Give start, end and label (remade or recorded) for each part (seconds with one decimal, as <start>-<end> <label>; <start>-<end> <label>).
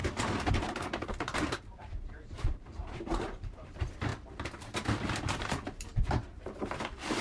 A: 0.0-1.1 recorded; 1.1-4.1 remade; 4.1-5.0 recorded; 5.0-7.2 remade